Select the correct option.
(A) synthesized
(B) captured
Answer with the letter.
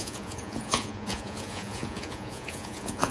A